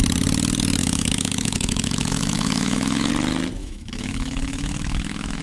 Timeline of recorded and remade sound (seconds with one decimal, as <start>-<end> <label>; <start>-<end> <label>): 0.0-0.8 recorded; 0.8-3.1 remade; 3.1-3.6 recorded; 3.6-5.4 remade